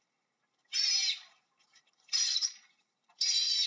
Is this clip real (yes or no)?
no